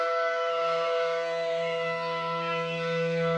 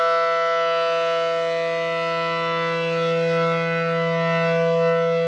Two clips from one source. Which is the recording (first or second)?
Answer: second